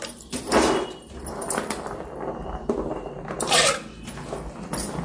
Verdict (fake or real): real